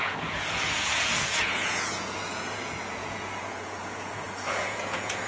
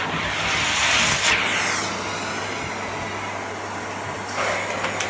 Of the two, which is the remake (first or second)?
first